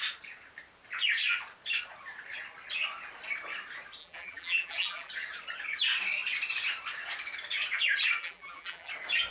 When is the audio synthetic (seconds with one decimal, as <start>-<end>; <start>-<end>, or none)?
4.0-5.1; 8.2-8.9